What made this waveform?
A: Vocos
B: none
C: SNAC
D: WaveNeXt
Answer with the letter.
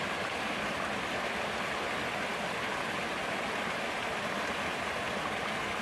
B